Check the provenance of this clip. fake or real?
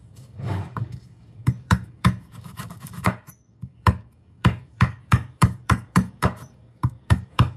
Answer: fake